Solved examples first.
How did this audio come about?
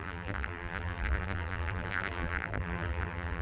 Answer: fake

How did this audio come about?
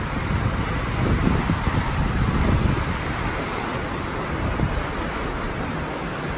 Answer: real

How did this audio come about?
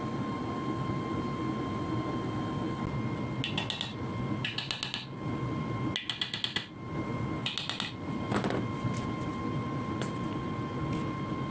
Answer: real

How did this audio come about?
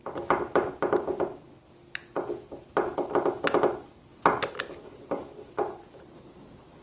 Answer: real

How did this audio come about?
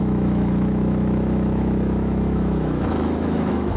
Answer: fake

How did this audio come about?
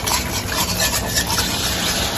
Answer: real